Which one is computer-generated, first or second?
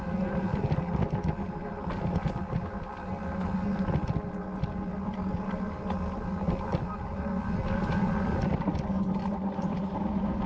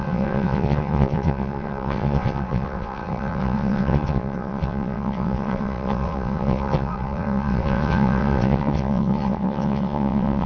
second